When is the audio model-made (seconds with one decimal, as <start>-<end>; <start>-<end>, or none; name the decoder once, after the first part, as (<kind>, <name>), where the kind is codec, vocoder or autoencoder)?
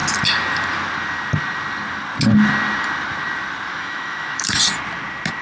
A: 3.7-4.6 (autoencoder, DAC-VAE)